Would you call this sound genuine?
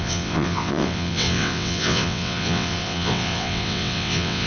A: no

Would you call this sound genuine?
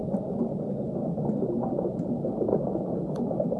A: yes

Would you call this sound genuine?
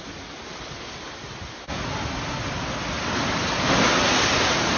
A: yes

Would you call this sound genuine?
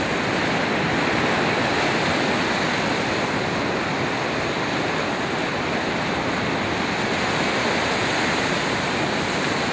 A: yes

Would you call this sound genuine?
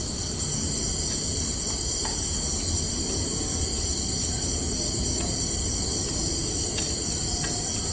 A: yes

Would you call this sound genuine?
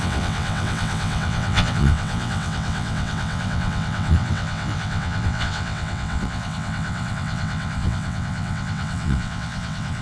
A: no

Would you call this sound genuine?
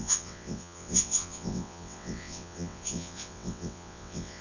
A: no